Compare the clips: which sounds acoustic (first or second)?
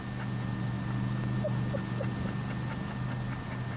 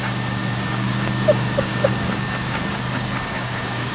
first